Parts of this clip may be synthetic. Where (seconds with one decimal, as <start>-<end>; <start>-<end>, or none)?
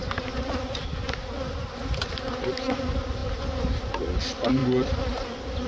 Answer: none